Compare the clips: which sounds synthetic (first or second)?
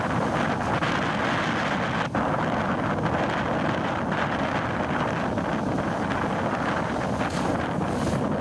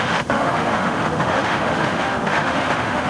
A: second